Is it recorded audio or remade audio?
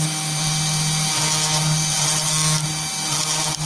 recorded